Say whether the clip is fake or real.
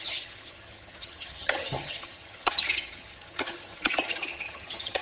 fake